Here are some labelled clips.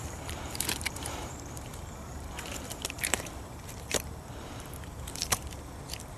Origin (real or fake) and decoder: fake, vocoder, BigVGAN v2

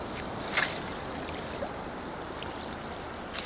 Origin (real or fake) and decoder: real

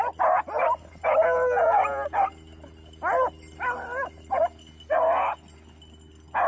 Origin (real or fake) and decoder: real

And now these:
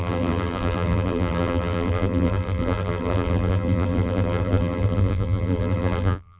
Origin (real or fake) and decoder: fake, vocoder, BigVGAN v2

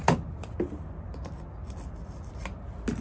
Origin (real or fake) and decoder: real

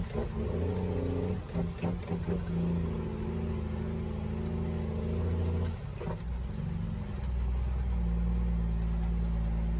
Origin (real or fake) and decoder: real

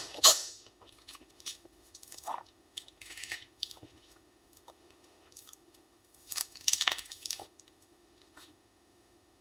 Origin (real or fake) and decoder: fake, autoencoder, DAC-VAE